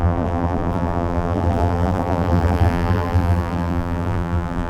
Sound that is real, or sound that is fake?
fake